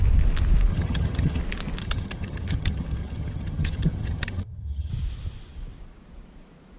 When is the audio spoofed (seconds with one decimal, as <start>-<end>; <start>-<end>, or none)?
0.7-1.4; 1.8-4.9